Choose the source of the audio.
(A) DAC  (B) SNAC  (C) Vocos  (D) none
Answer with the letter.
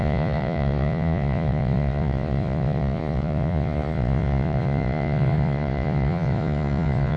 C